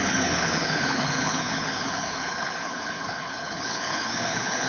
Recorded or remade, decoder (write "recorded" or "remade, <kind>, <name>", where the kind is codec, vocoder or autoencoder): remade, codec, HILCodec